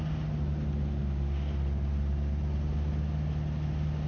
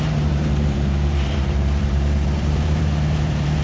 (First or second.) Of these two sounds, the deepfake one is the second